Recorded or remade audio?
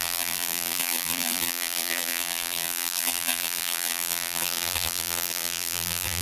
remade